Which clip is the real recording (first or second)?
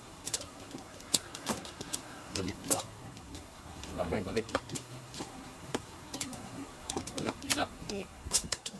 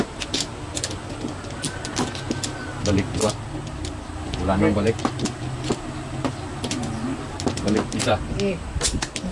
second